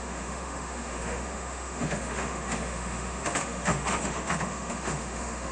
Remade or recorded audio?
remade